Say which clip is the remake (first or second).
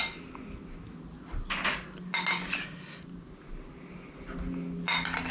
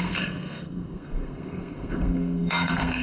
second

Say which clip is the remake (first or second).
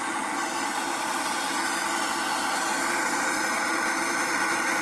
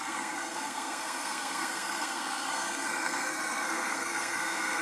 second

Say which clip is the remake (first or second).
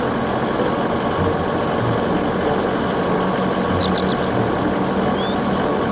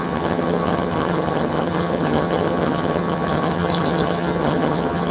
second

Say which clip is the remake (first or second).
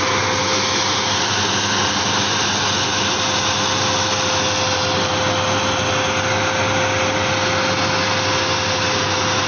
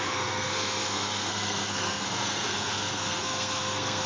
second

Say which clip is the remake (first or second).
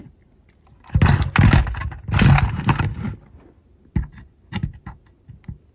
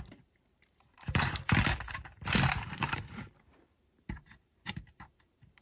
second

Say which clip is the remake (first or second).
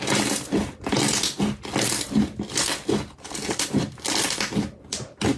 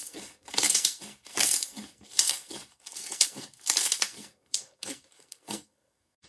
second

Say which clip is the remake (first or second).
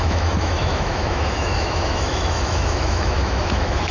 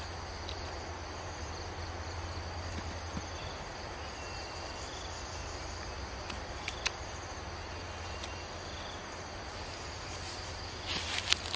first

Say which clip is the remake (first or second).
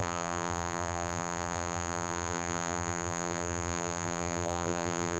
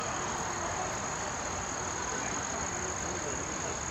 first